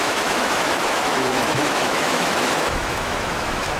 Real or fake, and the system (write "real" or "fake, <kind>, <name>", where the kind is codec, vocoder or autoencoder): fake, autoencoder, DAC-VAE